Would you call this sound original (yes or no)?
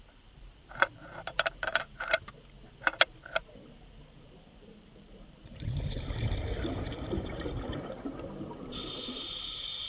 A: no